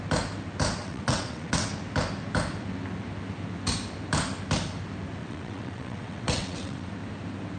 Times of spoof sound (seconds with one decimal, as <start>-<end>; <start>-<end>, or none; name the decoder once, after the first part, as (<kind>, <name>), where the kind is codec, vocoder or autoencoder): 0.8-1.7 (vocoder, WaveNeXt); 5.2-6.9